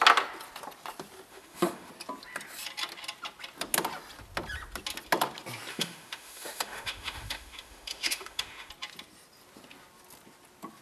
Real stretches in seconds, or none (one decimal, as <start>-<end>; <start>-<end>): 0.0-1.3; 1.9-5.7; 8.7-10.8